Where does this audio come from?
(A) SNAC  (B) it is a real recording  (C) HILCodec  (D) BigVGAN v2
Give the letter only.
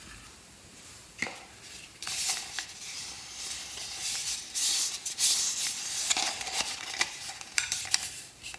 D